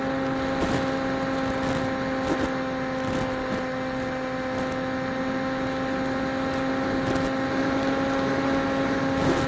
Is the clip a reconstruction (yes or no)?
no